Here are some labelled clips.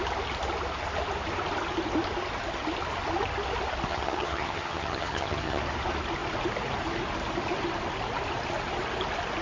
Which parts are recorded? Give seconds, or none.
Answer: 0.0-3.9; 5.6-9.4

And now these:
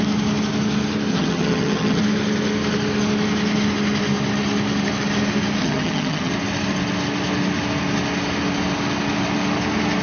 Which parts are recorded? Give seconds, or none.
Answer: 0.0-1.1; 2.0-5.6; 6.3-10.0

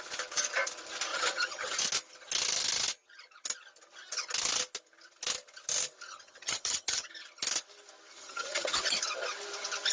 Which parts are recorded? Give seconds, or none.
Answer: 0.0-1.1; 1.8-6.1; 7.1-8.2; 8.7-9.9